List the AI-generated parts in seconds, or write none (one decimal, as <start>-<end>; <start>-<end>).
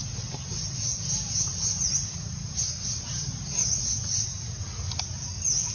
none